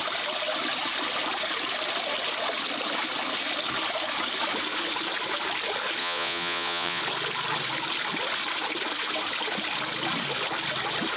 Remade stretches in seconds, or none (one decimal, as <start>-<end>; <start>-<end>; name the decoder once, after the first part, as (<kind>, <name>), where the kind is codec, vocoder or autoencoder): 6.0-7.0 (vocoder, Vocos)